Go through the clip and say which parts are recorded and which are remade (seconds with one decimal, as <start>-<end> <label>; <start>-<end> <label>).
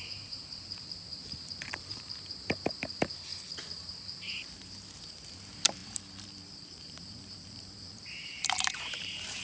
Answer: 0.0-3.3 remade; 3.3-3.8 recorded; 3.8-9.4 remade